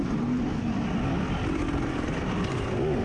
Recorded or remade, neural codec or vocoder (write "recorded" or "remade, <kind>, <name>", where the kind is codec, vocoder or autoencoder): recorded